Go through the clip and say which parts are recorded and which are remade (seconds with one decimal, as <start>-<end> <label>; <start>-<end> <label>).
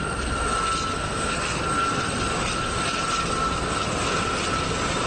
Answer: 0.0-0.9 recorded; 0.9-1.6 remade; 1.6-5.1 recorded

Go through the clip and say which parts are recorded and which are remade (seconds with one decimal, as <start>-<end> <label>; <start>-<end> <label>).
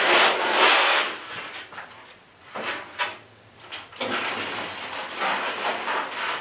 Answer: 0.0-6.4 recorded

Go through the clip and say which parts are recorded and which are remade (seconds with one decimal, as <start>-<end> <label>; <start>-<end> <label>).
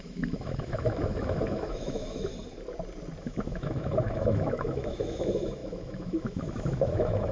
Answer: 0.0-2.3 remade; 2.3-3.2 recorded; 3.2-7.3 remade